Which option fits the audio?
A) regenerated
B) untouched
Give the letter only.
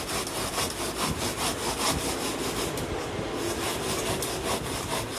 B